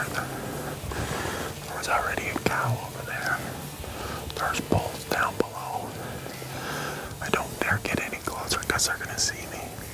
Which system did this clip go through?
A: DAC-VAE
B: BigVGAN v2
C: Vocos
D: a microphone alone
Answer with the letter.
D